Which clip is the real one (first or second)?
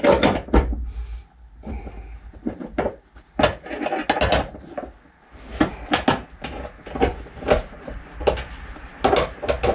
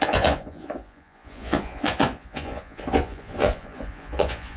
first